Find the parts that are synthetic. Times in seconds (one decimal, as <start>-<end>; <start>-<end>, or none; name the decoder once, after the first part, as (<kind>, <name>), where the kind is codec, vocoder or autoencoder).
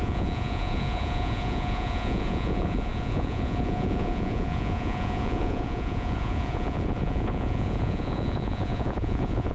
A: 0.0-9.5 (vocoder, Vocos)